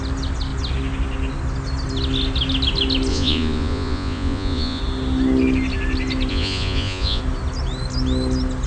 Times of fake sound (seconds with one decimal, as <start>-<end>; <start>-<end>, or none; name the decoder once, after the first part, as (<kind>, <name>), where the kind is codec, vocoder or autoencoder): 3.1-4.8 (vocoder, Vocos); 6.3-7.2